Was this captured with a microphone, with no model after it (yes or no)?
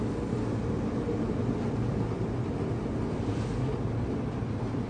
yes